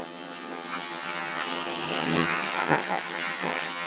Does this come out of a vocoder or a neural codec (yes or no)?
yes